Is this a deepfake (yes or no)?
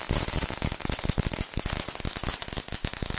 no